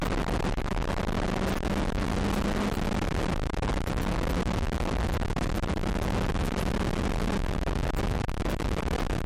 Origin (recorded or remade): recorded